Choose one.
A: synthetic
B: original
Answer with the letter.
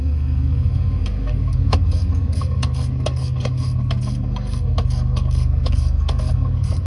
A